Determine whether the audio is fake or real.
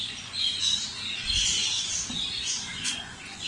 fake